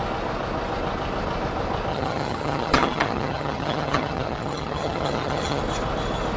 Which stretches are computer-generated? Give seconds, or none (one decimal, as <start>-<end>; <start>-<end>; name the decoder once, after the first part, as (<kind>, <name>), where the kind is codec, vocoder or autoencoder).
1.9-5.6 (vocoder, HiFi-GAN)